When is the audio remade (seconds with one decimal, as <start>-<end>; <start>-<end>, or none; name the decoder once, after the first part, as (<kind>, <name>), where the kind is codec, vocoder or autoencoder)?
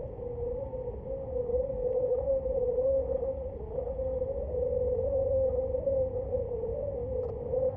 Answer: 1.5-2.3 (codec, DAC)